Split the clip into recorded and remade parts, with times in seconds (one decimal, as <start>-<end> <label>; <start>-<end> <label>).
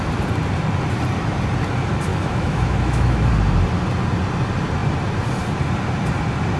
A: 0.0-2.1 recorded; 2.1-3.3 remade; 3.3-6.6 recorded